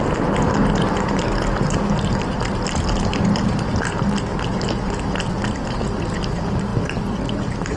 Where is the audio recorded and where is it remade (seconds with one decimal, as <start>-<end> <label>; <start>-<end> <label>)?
0.0-7.8 recorded